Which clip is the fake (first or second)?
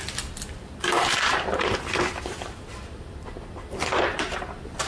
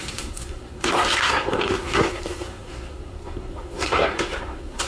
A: second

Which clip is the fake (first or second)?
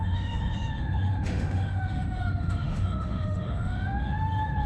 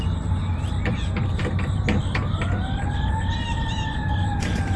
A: first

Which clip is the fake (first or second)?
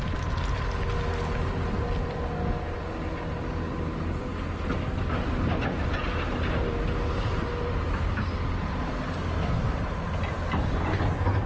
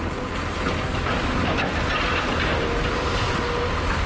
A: second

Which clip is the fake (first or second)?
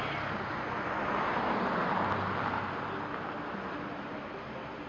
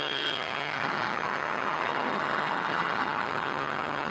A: second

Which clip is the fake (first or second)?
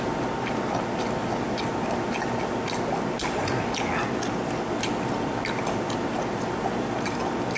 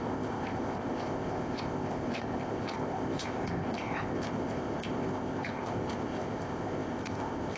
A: second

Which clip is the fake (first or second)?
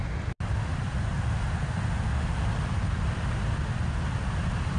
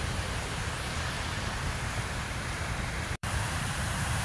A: second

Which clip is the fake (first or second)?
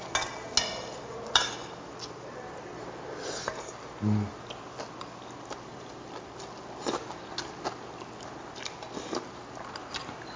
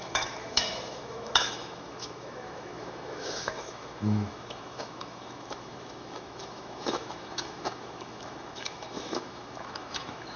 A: second